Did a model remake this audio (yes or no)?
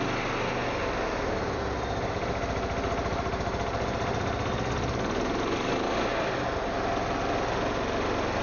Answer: no